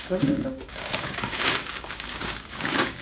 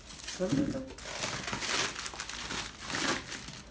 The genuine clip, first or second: second